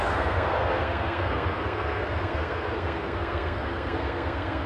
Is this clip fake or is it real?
fake